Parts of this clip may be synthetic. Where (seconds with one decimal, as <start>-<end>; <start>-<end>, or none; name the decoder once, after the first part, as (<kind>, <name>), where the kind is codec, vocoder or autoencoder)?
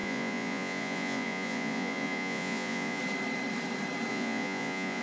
0.0-3.0 (vocoder, Vocos); 4.1-5.0